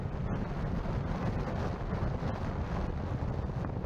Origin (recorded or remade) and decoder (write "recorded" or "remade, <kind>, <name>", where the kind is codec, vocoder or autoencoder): recorded